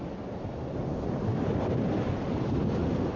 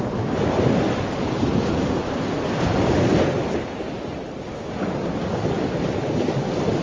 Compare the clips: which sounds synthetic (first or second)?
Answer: first